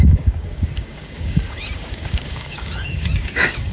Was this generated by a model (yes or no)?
yes